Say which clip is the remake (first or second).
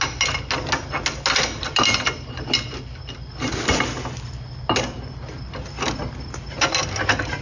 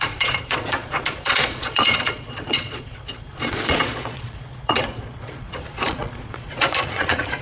second